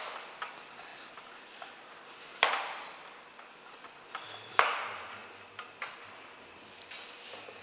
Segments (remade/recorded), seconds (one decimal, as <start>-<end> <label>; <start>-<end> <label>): 0.0-7.6 recorded